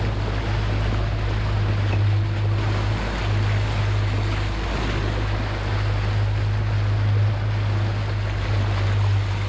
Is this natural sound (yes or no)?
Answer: yes